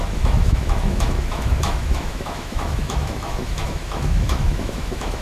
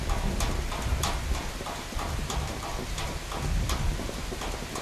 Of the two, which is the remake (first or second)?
first